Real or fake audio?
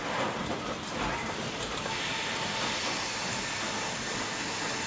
real